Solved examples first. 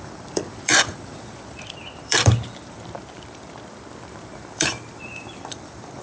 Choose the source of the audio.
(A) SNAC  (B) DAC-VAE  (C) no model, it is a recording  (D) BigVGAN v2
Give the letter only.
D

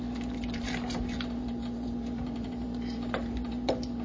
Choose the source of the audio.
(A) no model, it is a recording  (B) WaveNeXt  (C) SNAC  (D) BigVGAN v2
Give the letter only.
D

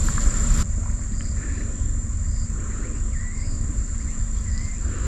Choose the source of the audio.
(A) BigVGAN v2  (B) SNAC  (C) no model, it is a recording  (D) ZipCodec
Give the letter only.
A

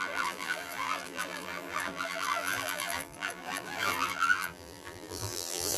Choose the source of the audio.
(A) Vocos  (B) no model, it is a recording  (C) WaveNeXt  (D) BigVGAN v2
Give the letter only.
D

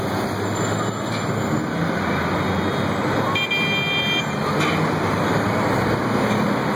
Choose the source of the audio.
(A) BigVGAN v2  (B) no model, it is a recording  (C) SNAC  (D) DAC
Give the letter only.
B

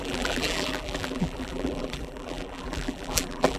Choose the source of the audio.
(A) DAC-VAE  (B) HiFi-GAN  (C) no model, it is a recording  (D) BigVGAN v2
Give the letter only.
D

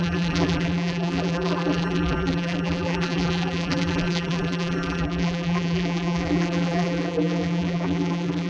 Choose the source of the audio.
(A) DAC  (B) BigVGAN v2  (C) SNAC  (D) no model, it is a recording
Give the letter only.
B